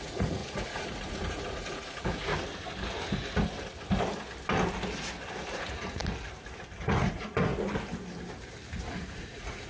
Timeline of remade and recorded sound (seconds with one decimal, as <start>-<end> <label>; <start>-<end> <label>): 0.0-2.3 remade; 2.3-5.6 recorded; 5.6-6.0 remade; 6.0-6.8 recorded; 6.8-7.5 remade; 7.5-8.9 recorded; 8.9-9.7 remade